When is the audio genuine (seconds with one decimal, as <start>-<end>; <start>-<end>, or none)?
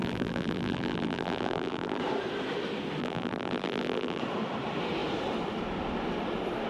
2.0-3.0; 4.2-6.7